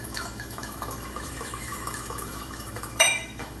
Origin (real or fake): fake